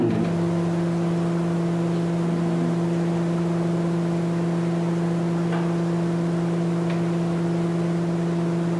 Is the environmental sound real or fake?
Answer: real